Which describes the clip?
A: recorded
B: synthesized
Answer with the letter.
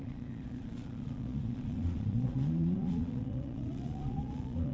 B